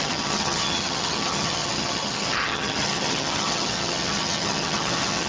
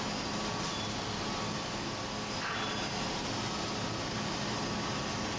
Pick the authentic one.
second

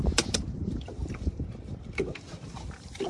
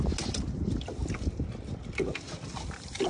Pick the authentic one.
second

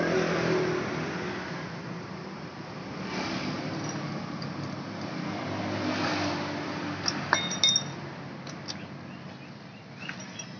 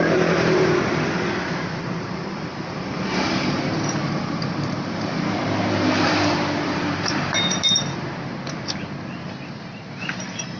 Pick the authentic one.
first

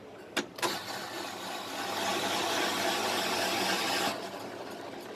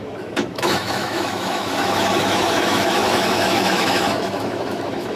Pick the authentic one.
first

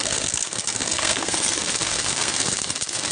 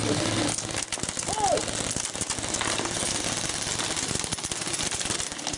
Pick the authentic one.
second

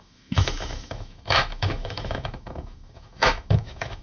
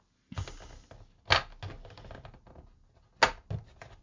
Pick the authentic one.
second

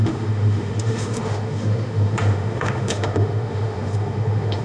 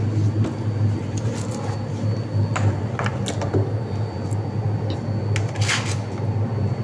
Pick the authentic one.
second